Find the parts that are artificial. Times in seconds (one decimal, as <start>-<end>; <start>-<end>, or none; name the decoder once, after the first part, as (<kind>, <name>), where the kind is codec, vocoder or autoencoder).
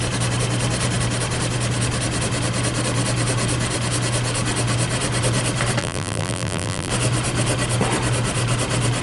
5.8-6.9 (vocoder, BigVGAN v2)